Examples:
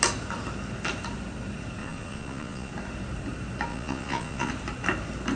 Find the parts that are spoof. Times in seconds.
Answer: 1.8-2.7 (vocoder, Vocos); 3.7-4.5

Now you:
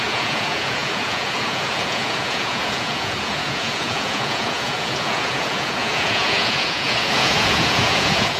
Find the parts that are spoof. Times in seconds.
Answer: 0.0-8.4 (vocoder, Vocos)

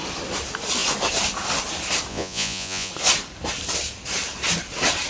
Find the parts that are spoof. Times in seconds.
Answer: 2.1-2.9 (vocoder, Vocos)

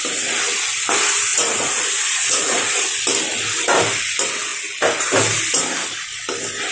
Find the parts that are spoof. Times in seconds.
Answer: 1.3-3.0 (vocoder, Vocos)

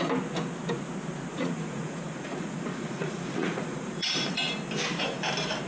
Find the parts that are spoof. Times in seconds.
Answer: 1.3-4.5 (vocoder, Vocos)

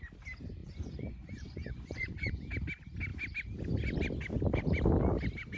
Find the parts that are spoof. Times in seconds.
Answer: 0.6-2.3 (vocoder, Vocos)

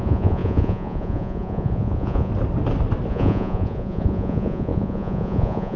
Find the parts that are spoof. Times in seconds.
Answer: 0.0-2.3 (vocoder, Vocos); 3.1-5.8